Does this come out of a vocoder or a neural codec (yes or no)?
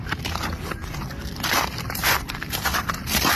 yes